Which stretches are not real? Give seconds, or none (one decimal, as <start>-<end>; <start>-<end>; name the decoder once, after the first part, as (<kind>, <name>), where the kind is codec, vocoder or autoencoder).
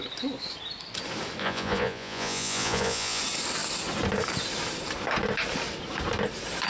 1.4-3.2 (vocoder, Vocos)